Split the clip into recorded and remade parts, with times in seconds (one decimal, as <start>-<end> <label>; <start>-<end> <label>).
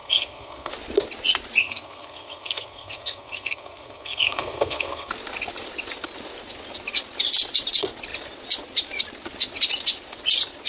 0.0-0.7 remade; 0.7-1.6 recorded; 1.6-5.1 remade; 5.1-10.7 recorded